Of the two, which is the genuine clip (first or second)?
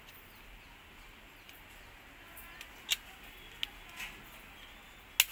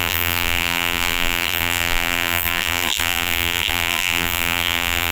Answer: first